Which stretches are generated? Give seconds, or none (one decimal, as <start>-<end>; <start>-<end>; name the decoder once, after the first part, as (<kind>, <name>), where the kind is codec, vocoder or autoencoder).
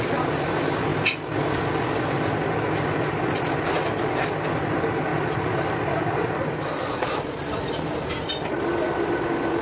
5.1-7.7 (vocoder, BigVGAN v2)